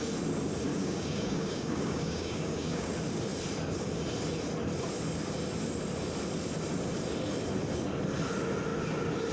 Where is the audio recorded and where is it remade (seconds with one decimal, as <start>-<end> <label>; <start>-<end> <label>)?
0.0-0.7 recorded; 0.7-2.9 remade; 2.9-9.3 recorded